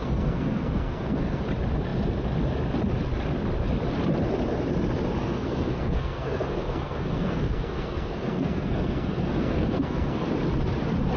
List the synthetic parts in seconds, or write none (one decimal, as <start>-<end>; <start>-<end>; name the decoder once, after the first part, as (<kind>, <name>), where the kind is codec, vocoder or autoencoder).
0.0-1.4 (codec, SNAC); 5.2-10.3